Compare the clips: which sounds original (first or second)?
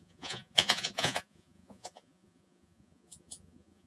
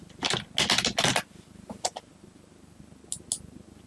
second